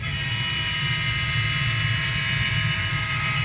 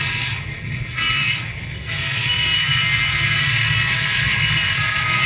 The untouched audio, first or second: first